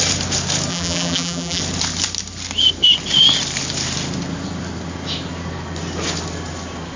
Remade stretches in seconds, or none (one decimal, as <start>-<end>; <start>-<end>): 0.7-1.6